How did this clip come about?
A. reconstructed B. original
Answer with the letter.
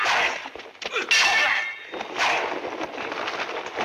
B